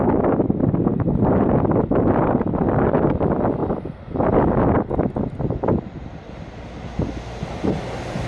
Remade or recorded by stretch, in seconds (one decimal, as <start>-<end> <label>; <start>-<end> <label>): 0.0-8.3 recorded